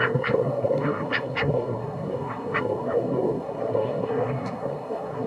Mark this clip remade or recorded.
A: remade